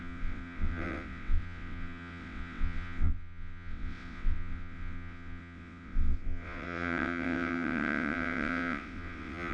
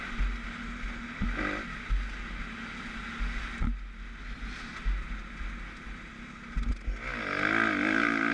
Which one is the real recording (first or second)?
second